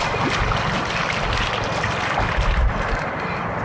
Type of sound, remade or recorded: recorded